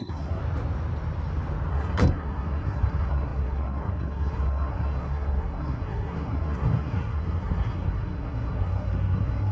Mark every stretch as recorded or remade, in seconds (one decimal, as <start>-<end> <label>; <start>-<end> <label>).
0.0-0.4 remade; 0.4-1.7 recorded; 1.7-9.5 remade